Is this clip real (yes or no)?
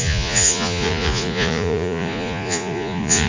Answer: no